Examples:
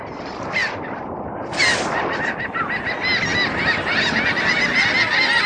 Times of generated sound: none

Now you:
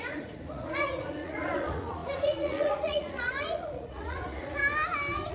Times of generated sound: 0.0-4.6 (vocoder, Vocos)

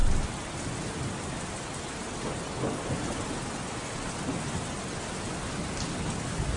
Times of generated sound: none

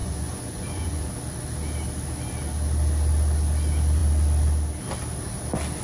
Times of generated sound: 0.0-1.1 (vocoder, Vocos)

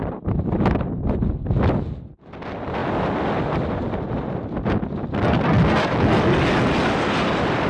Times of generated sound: none